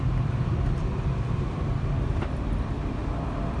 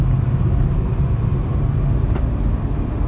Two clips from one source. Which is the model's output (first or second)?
first